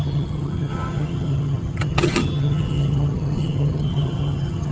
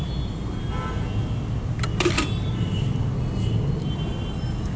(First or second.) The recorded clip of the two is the second